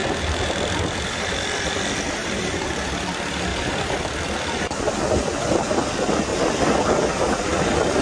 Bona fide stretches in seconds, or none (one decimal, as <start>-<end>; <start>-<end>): 1.3-2.2; 2.9-3.5; 4.2-8.0